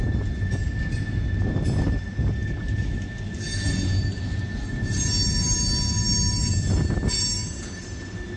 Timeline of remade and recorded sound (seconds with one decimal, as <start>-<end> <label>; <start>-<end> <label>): 0.0-7.4 recorded; 7.4-8.0 remade; 8.0-8.4 recorded